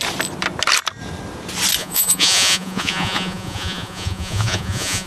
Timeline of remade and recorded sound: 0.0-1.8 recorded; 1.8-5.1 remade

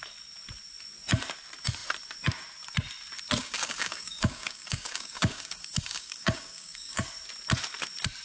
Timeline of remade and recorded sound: 0.0-3.4 recorded; 3.4-7.0 remade; 7.0-8.2 recorded

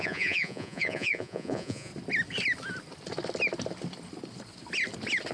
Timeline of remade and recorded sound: 0.0-1.9 remade; 1.9-5.3 recorded

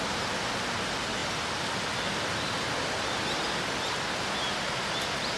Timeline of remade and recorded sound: 0.0-5.4 recorded

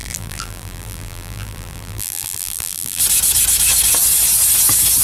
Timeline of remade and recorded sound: 0.0-3.0 remade; 3.0-5.0 recorded

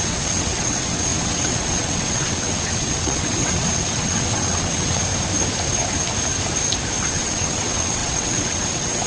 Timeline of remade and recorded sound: 0.0-5.0 remade; 5.0-7.1 recorded; 7.1-9.1 remade

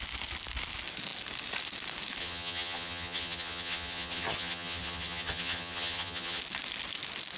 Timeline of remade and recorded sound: 0.0-2.2 recorded; 2.2-6.4 remade; 6.4-7.4 recorded

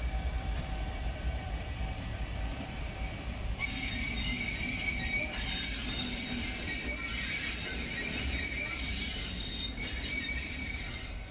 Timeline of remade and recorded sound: 0.0-7.7 remade; 7.7-8.3 recorded; 8.3-11.3 remade